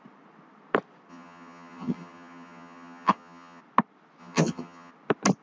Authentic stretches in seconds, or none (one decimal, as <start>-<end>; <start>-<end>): 0.0-1.1; 3.6-4.2; 4.9-5.4